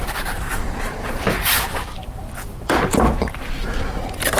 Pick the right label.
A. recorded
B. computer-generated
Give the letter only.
B